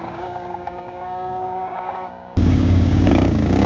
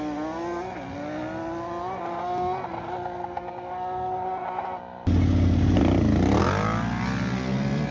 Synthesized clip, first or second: first